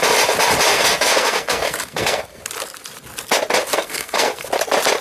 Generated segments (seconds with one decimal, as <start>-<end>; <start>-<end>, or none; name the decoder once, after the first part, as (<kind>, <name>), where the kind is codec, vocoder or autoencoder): 0.7-2.4 (codec, SNAC); 3.6-4.5